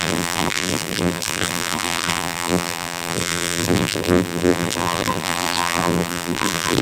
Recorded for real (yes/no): no